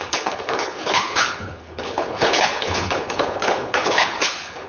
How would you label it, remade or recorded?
remade